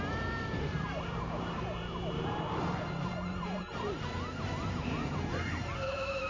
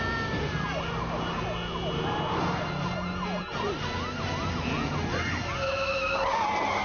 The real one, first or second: second